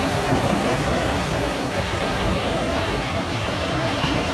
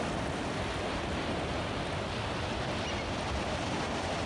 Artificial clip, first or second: first